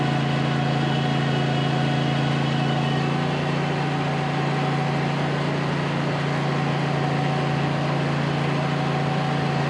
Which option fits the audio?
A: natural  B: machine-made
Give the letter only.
A